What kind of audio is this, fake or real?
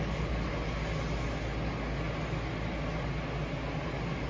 real